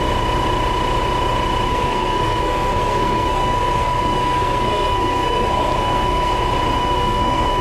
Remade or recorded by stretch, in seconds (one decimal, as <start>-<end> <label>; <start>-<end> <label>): 0.0-1.7 recorded; 1.7-6.3 remade; 6.3-6.8 recorded; 6.8-7.6 remade